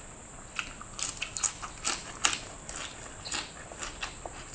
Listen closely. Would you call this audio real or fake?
real